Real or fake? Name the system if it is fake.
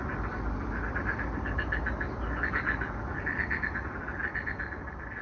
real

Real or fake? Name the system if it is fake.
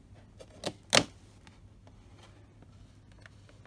real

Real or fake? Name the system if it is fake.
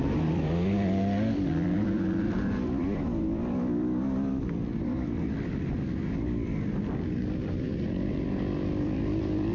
fake, vocoder, BigVGAN v2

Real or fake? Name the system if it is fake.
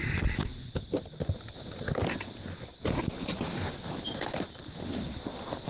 real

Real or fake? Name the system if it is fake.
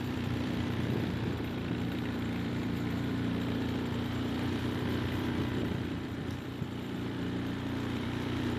fake, vocoder, BigVGAN v2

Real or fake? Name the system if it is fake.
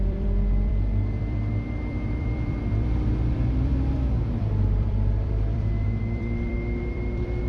fake, vocoder, BigVGAN v2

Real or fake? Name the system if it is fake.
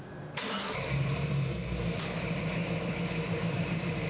fake, vocoder, BigVGAN v2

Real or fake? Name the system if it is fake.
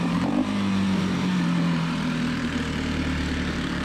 fake, vocoder, BigVGAN v2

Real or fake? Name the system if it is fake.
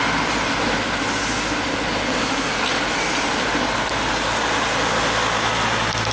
real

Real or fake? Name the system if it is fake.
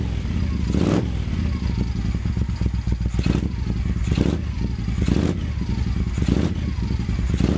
real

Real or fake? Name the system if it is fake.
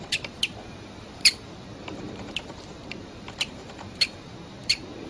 fake, vocoder, BigVGAN v2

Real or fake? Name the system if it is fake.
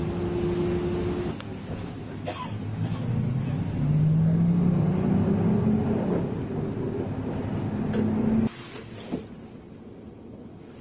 real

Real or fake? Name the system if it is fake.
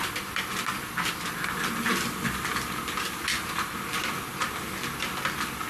real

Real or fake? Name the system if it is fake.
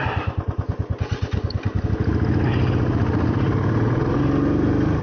real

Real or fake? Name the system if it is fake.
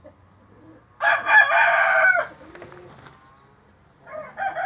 real